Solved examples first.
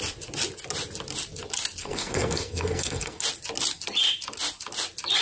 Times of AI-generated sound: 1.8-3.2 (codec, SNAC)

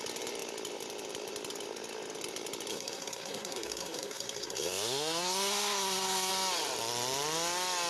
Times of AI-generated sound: 2.7-6.3 (codec, SNAC)

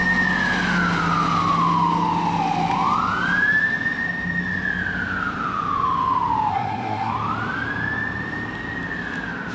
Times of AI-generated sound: 6.5-7.1 (codec, SNAC)

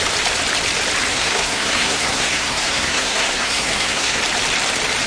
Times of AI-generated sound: 1.1-4.2 (codec, SNAC)

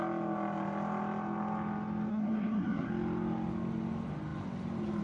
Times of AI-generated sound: 2.1-2.9 (codec, SNAC)

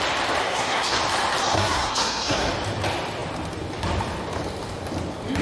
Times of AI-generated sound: 0.4-1.0 (codec, SNAC); 1.4-2.5

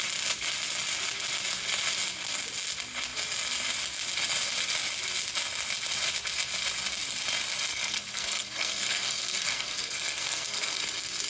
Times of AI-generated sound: 7.7-10.8 (codec, SNAC)